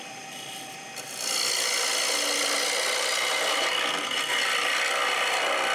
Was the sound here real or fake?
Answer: real